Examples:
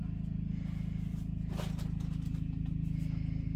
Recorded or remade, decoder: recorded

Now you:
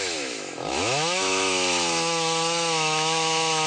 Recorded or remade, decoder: remade, autoencoder, DAC-VAE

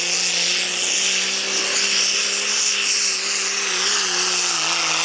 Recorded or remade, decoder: recorded